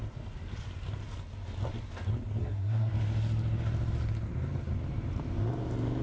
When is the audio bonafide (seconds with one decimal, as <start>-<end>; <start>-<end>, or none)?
0.0-2.4; 2.9-6.0